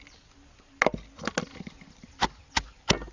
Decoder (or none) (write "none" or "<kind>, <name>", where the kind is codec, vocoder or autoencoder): none